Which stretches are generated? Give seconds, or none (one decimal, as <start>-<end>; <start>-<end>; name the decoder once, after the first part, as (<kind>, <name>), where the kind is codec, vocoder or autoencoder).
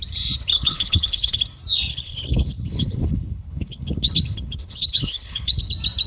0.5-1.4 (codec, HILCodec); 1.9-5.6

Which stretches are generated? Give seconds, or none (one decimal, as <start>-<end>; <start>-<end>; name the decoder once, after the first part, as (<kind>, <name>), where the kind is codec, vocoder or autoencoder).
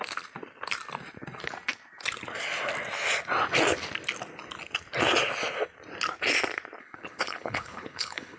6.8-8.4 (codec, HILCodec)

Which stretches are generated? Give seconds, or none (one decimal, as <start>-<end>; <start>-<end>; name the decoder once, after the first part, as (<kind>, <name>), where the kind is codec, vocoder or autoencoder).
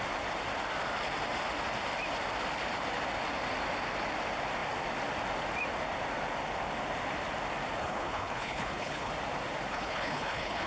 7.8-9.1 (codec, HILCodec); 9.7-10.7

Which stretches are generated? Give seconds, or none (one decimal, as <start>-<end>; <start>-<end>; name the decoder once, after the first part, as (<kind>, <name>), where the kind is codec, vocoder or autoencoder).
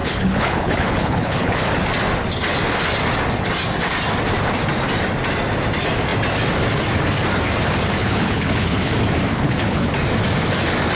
0.0-1.6 (codec, HILCodec); 8.0-8.9; 9.3-9.9